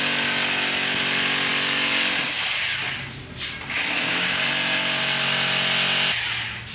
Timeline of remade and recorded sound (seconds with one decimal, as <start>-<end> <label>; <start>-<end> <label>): 0.0-6.7 recorded